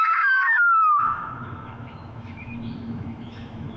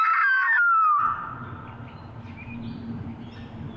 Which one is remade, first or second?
first